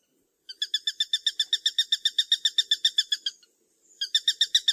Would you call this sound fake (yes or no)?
no